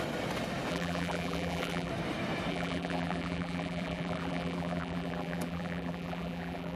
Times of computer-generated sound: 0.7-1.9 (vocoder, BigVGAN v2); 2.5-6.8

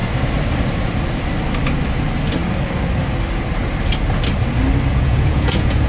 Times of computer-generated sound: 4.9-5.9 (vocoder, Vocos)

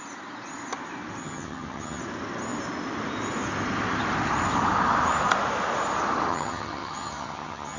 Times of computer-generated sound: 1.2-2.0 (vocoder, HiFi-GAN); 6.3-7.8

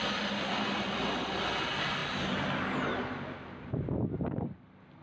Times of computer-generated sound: none

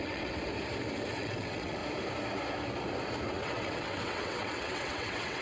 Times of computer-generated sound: 0.0-0.5 (vocoder, WaveNeXt); 1.1-1.8; 3.3-5.4